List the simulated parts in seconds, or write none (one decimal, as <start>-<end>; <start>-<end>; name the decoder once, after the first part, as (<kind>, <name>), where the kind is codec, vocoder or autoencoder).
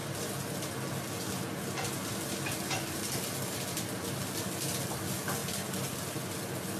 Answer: none